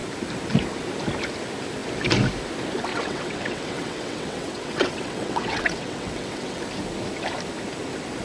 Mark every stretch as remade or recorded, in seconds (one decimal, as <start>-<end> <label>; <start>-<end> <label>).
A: 0.0-2.9 recorded; 2.9-6.6 remade; 6.6-8.2 recorded